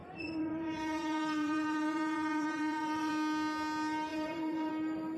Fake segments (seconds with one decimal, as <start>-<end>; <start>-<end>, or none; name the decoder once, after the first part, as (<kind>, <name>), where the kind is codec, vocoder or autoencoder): 0.0-3.1 (vocoder, Vocos); 4.1-4.7